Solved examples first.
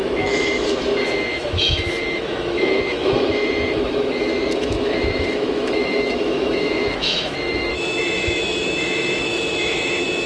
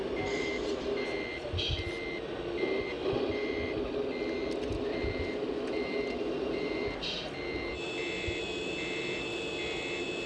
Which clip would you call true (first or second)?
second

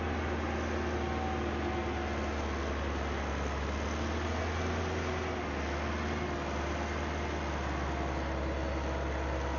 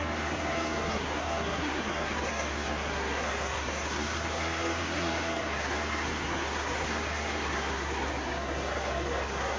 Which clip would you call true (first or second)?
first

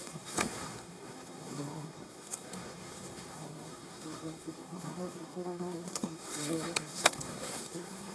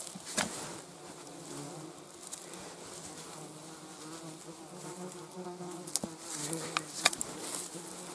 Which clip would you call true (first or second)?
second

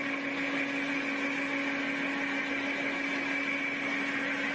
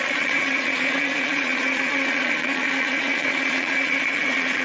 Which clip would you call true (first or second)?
first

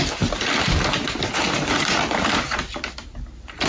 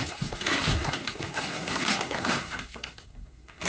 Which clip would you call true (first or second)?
first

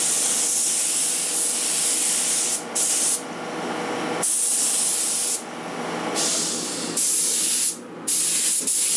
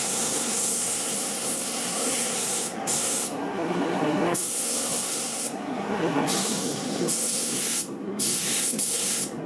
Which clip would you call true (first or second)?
first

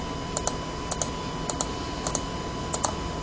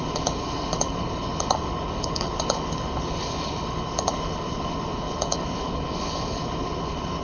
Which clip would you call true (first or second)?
first